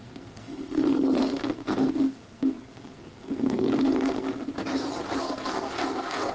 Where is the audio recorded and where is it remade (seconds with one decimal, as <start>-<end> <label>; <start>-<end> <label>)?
0.0-4.5 remade; 4.5-5.2 recorded; 5.2-6.3 remade